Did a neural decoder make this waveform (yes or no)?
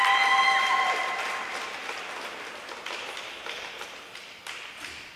no